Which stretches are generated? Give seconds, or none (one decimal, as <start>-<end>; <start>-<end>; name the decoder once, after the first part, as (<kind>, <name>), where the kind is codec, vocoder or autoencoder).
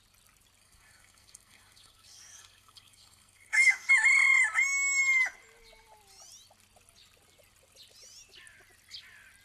0.6-3.9 (codec, SNAC)